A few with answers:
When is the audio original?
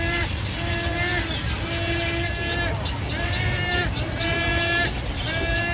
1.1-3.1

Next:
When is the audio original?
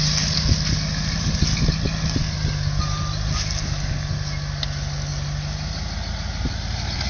0.0-7.1